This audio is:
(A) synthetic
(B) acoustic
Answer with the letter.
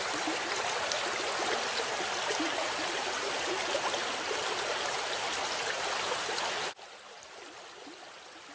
B